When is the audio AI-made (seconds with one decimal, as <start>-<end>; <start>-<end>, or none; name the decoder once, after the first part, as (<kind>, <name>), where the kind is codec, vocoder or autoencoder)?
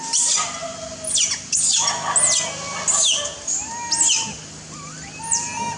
none